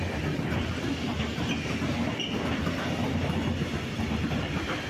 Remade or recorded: recorded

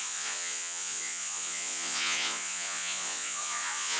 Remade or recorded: remade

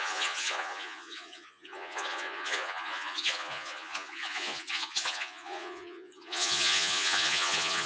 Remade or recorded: remade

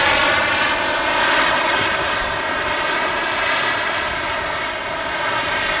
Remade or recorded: recorded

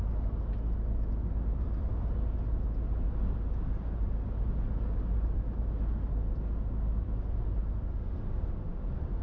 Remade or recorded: recorded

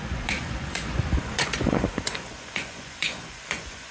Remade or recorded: remade